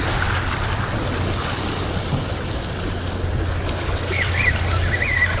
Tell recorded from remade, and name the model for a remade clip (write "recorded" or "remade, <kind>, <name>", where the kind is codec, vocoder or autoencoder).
recorded